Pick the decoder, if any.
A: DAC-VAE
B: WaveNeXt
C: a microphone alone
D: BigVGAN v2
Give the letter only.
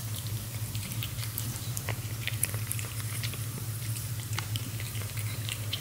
D